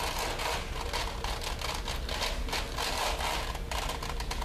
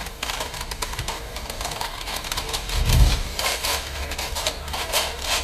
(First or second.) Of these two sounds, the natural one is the first